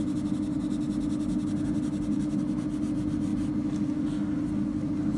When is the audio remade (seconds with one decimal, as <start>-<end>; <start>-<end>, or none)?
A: none